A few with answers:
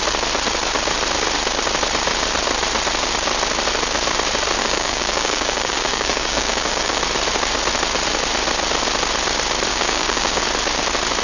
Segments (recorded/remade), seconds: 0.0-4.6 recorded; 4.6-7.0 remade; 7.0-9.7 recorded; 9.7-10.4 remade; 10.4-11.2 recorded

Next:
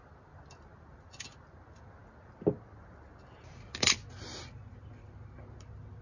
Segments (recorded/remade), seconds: 0.0-6.0 recorded

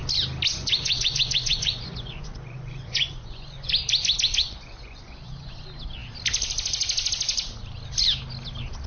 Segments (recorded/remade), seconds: 0.0-0.5 recorded; 0.5-3.7 remade; 3.7-4.4 recorded; 4.4-5.6 remade; 5.6-8.9 recorded

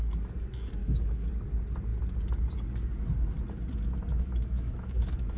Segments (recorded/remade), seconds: 0.0-0.8 recorded; 0.8-1.3 remade; 1.3-4.1 recorded; 4.1-5.4 remade

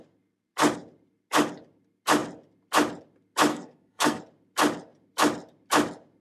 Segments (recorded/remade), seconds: 0.0-3.5 recorded; 3.5-4.2 remade; 4.2-6.2 recorded